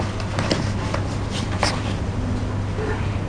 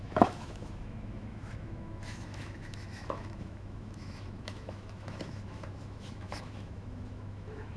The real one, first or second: first